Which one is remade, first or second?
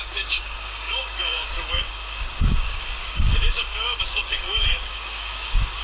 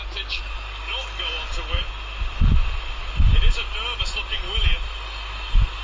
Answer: first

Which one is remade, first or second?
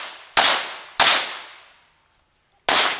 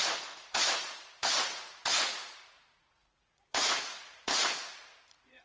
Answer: second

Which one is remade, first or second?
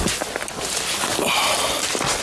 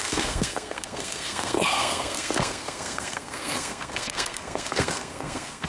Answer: second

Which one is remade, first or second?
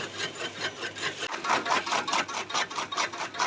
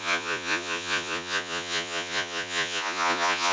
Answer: second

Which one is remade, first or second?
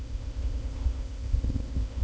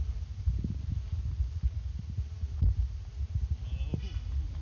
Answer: first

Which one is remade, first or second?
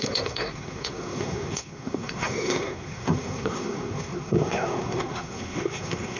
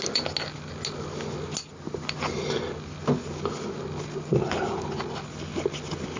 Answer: first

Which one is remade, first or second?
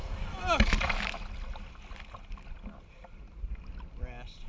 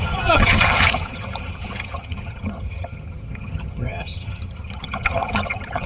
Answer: second